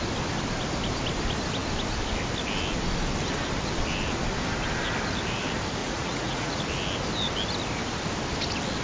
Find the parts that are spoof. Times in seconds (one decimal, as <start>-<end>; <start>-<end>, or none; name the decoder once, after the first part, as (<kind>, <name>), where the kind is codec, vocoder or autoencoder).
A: 5.8-6.6 (vocoder, Vocos)